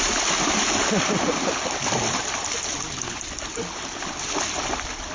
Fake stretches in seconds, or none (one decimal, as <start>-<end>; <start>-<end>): none